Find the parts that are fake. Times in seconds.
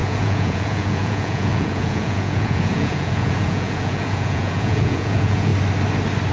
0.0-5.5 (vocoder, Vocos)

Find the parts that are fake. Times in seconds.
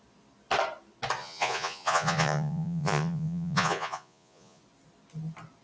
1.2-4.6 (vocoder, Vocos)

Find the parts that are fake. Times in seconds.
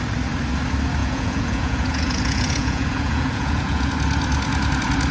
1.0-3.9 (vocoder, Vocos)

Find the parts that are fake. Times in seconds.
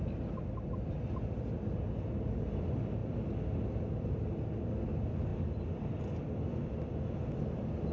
none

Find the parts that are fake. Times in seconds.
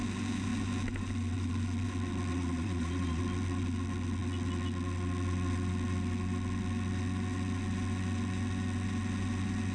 2.3-3.2 (vocoder, Vocos)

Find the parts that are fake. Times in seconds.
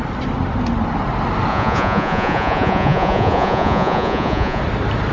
1.5-4.6 (vocoder, Vocos)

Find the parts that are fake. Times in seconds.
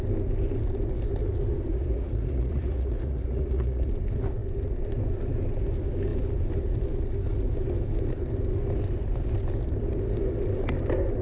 1.7-3.9 (vocoder, Vocos)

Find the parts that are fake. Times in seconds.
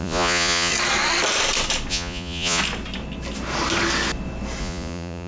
0.0-0.7 (vocoder, Vocos); 1.9-2.6; 4.6-5.3